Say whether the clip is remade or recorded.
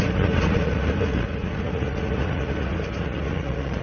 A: remade